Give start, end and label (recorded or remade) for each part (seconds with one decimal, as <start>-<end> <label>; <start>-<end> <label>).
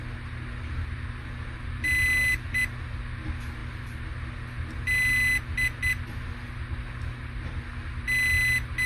0.0-8.9 recorded